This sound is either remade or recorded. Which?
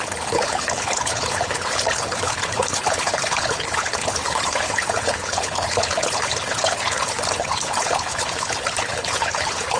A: remade